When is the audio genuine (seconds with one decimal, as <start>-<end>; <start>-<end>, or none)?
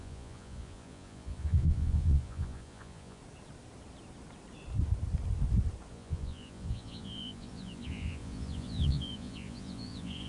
3.2-5.9